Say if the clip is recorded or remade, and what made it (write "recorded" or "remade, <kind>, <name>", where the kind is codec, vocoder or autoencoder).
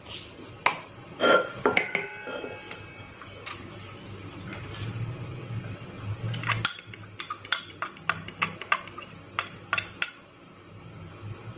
recorded